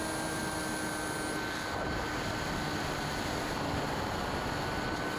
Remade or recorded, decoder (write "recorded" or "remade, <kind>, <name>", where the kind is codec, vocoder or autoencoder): recorded